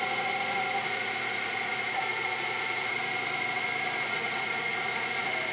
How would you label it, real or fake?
fake